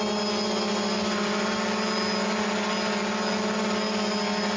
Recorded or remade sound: recorded